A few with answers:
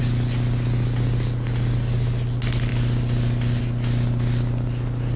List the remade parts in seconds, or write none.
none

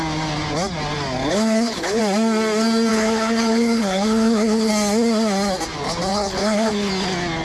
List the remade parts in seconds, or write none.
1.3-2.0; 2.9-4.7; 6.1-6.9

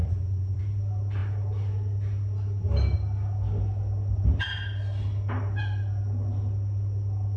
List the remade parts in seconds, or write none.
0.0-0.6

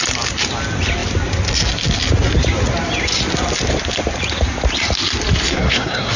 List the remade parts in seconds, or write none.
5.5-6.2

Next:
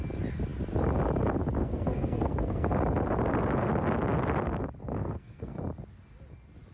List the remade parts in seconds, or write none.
1.6-2.7; 4.8-5.6